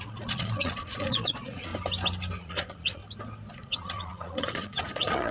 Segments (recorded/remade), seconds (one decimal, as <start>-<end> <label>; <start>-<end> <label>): 0.0-1.7 remade; 1.7-2.4 recorded; 2.4-3.0 remade; 3.0-3.5 recorded; 3.5-5.3 remade